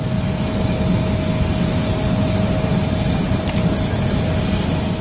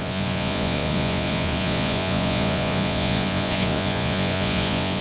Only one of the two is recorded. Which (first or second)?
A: first